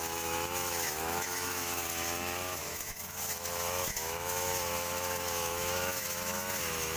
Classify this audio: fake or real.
fake